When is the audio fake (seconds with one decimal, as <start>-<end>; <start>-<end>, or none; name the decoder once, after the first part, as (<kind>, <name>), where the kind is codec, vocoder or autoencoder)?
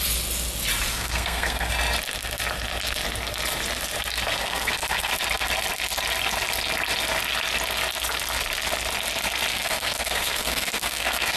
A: 0.9-1.7 (codec, SNAC); 4.3-5.1; 9.5-11.4